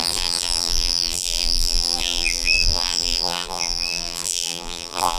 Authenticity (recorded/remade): remade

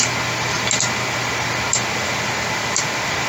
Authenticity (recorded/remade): recorded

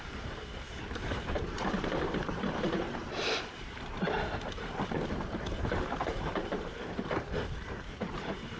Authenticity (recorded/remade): remade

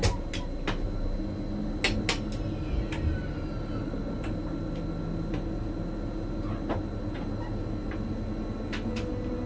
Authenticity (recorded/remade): recorded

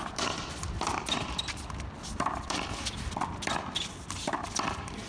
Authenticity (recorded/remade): remade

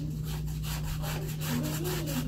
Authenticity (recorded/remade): recorded